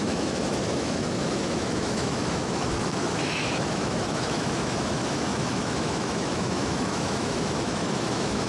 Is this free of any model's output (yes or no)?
no